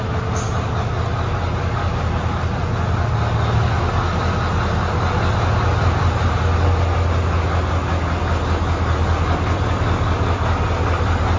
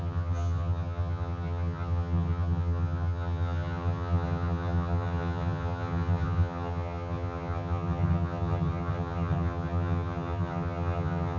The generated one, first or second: second